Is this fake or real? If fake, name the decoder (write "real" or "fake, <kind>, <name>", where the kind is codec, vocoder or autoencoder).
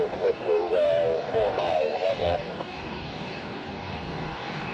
fake, codec, DAC